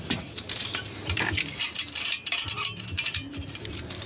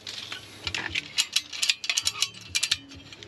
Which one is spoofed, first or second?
first